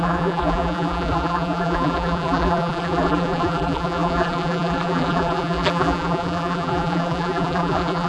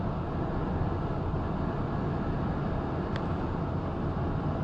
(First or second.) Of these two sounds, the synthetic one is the first